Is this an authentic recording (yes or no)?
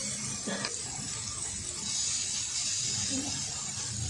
yes